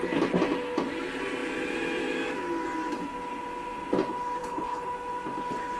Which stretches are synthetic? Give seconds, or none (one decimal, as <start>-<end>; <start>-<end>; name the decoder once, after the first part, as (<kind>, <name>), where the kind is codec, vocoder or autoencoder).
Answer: 4.4-4.9 (codec, HILCodec)